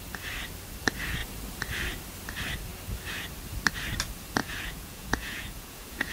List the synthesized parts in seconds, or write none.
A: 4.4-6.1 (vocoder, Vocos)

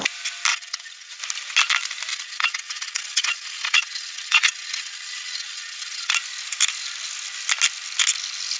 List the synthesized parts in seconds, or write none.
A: 0.5-1.2 (vocoder, Vocos); 2.1-6.1